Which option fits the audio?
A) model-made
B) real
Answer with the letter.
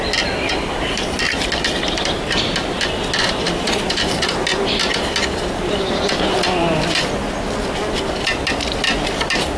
B